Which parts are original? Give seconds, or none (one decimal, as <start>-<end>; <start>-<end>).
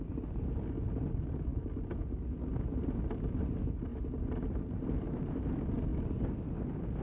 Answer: 0.0-3.9; 5.5-7.0